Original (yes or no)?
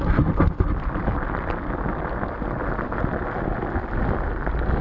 yes